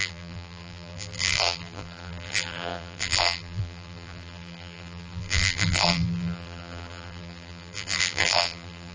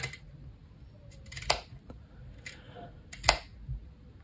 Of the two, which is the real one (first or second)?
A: second